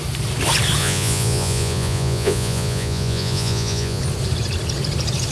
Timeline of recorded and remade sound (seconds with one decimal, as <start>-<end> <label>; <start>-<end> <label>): 0.0-0.8 recorded; 0.8-4.0 remade; 4.0-5.3 recorded

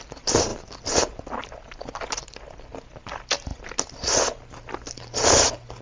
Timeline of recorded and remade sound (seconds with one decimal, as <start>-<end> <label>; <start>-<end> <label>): 0.0-5.8 recorded

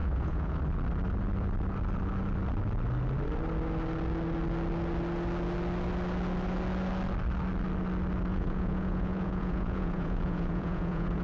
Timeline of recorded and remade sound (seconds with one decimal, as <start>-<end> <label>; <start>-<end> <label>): 0.0-0.6 remade; 0.6-8.3 recorded; 8.3-11.2 remade

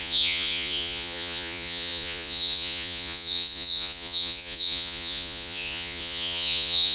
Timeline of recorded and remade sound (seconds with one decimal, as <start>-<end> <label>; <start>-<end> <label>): 0.0-6.9 remade

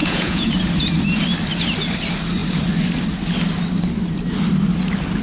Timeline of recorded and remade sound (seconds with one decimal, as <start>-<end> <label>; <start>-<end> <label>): 0.0-0.5 remade; 0.5-5.2 recorded

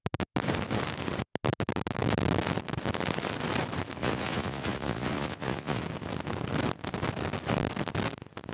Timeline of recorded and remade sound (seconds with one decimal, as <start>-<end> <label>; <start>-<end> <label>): 0.0-4.0 recorded; 4.0-5.8 remade; 5.8-8.5 recorded

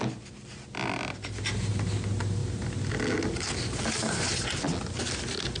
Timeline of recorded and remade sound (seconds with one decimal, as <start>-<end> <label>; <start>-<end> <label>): 0.0-5.6 recorded

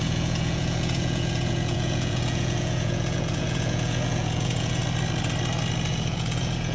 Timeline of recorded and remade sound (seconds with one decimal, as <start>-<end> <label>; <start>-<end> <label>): 0.0-4.8 remade; 4.8-5.9 recorded; 5.9-6.7 remade